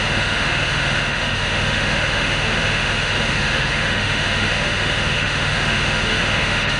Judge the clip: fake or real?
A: fake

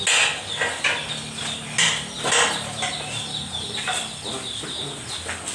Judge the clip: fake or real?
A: real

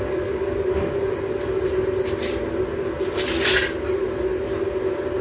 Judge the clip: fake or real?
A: real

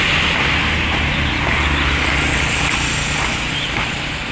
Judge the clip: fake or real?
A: real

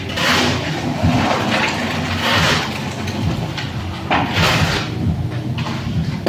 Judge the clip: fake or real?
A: real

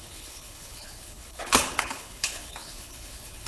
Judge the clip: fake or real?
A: fake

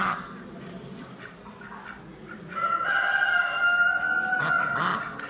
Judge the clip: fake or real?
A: real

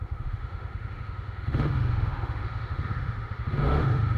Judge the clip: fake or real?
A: fake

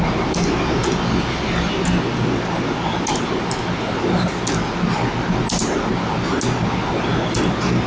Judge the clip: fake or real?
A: real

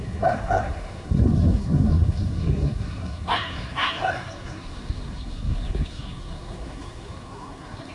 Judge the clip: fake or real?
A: fake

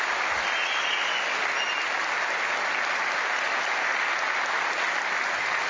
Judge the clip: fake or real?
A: real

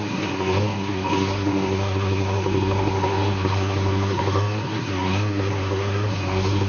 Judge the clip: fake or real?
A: fake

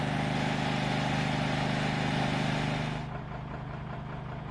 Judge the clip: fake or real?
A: real